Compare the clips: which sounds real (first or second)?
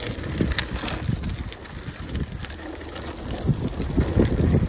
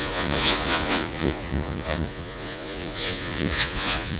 first